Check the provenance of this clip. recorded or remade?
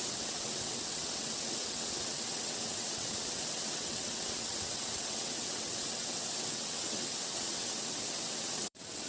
remade